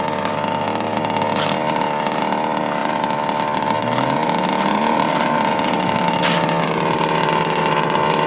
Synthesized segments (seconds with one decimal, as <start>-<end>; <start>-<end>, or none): 0.0-8.3